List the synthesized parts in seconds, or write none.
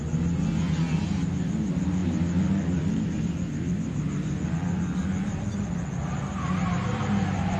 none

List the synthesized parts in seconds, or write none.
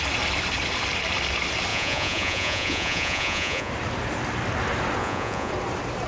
1.7-3.7 (vocoder, Vocos); 5.0-5.5